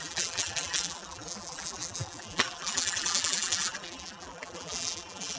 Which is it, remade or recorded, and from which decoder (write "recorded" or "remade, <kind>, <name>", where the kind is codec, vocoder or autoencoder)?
remade, vocoder, BigVGAN v2